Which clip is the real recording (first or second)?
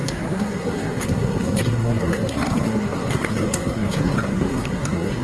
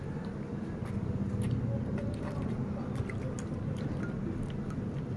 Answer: second